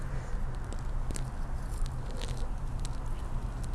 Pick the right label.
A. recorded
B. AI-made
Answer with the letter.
A